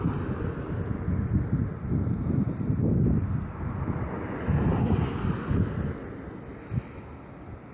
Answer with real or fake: real